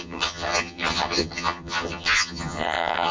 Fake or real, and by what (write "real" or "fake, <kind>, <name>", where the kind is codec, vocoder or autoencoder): fake, vocoder, HiFi-GAN